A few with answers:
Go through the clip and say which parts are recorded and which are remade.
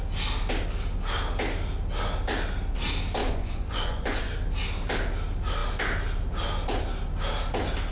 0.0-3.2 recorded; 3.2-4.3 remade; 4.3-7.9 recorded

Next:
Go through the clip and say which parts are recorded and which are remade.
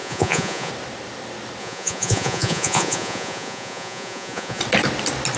0.0-0.7 remade; 0.7-1.6 recorded; 1.6-4.6 remade; 4.6-5.4 recorded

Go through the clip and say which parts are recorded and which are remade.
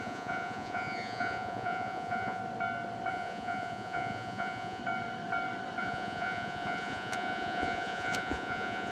0.0-2.4 remade; 2.4-3.1 recorded; 3.1-4.8 remade; 4.8-5.8 recorded; 5.8-8.9 remade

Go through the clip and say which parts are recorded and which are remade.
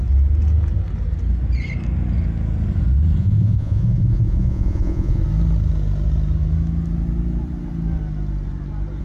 0.0-3.2 recorded; 3.2-5.2 remade; 5.2-9.0 recorded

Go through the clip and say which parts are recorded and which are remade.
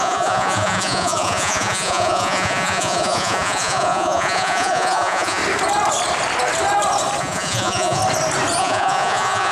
0.0-5.4 remade; 5.4-7.2 recorded; 7.2-8.0 remade; 8.0-8.6 recorded; 8.6-9.5 remade